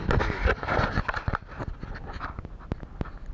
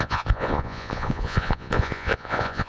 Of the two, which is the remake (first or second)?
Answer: second